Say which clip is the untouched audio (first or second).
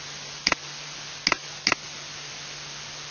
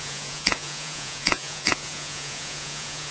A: first